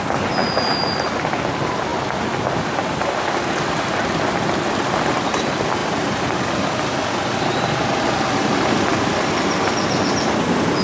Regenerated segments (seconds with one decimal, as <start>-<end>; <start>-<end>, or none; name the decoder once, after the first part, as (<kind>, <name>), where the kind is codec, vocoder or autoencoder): none